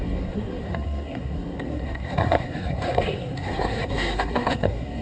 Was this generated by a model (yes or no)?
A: yes